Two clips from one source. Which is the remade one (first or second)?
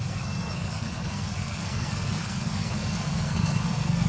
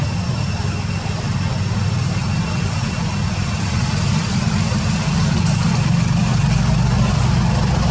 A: first